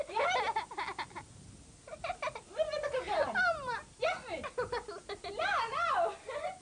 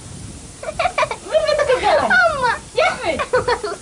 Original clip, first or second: first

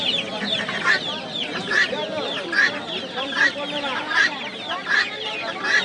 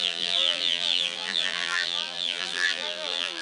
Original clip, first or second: first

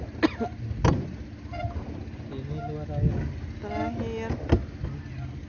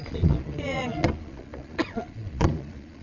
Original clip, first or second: first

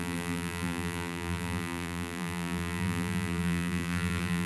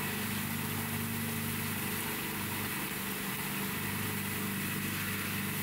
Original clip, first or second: second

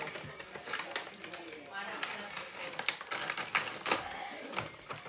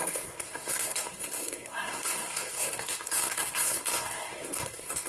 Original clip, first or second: first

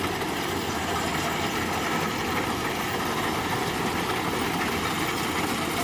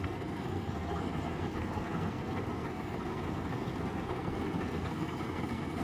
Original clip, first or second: first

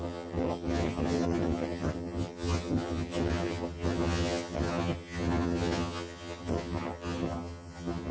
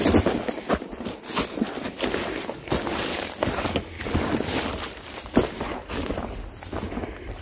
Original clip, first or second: second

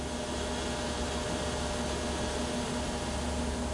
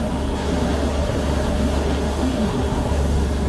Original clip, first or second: first